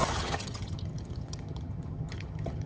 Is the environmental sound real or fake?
fake